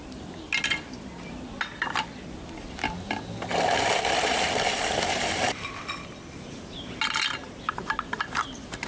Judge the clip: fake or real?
real